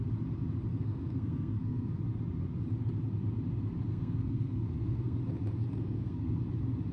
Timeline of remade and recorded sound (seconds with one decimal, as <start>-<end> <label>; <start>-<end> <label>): 0.0-0.7 recorded; 0.7-2.0 remade; 2.0-3.9 recorded; 3.9-5.2 remade; 5.2-5.7 recorded; 5.7-6.4 remade; 6.4-6.9 recorded